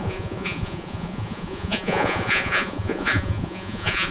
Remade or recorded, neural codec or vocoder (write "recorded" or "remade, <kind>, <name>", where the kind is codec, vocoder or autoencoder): remade, vocoder, Vocos